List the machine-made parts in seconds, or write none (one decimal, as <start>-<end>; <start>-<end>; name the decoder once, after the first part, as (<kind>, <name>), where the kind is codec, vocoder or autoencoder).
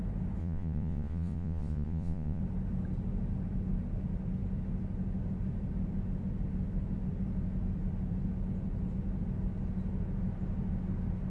0.4-2.4 (vocoder, Vocos)